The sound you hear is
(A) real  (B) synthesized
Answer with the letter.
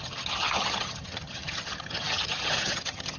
B